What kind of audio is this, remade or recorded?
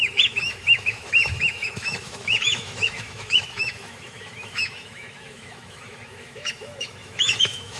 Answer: remade